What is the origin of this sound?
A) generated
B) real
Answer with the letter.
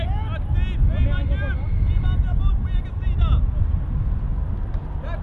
B